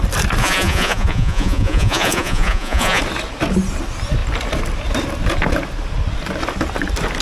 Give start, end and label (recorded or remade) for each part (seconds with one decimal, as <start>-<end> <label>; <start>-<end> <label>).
0.0-0.4 recorded; 0.4-3.0 remade; 3.0-7.2 recorded